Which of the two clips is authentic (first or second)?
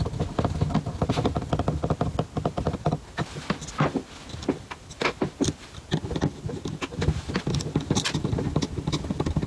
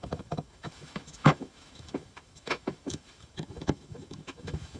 first